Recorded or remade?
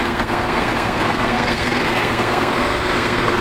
remade